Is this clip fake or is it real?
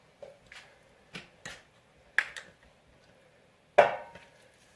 real